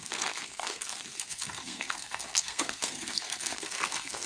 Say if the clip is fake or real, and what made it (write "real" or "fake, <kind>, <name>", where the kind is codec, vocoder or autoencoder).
fake, codec, SNAC